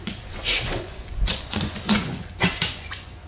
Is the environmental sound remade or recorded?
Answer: remade